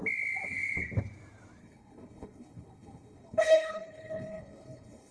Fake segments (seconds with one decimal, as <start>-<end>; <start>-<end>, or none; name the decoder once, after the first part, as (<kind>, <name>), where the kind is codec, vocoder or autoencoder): 1.6-5.1 (codec, HILCodec)